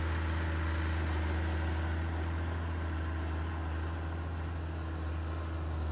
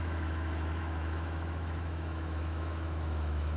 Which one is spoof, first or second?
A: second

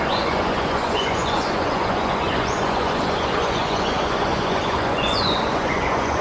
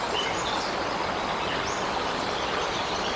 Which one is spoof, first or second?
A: first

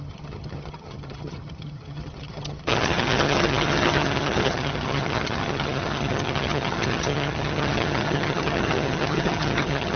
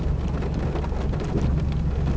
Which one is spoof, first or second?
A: first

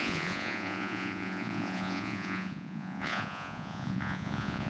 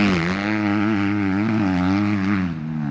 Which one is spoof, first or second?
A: first